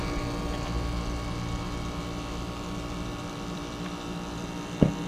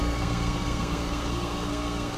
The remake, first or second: second